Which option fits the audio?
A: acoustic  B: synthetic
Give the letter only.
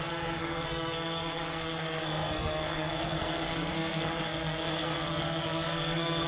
B